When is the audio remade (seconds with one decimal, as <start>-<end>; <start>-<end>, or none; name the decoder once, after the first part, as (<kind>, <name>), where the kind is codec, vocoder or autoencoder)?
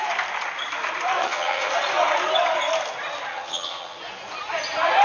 1.2-1.7 (vocoder, HiFi-GAN); 3.3-4.0